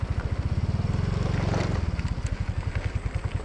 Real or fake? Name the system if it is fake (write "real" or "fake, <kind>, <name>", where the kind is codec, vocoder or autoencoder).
real